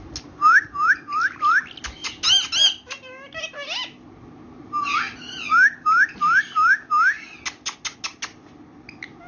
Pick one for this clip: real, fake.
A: real